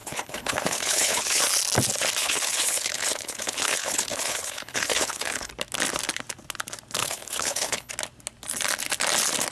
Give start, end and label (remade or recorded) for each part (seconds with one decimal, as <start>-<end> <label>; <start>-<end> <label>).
0.0-1.4 remade; 1.4-2.2 recorded; 2.2-5.5 remade; 5.5-7.0 recorded; 7.0-7.9 remade; 7.9-9.5 recorded